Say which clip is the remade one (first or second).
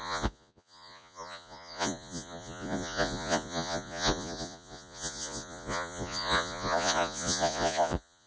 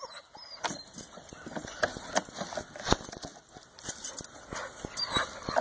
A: first